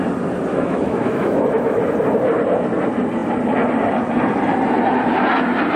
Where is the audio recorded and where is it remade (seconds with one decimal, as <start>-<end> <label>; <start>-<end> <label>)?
0.0-0.5 recorded; 0.5-1.8 remade; 1.8-5.8 recorded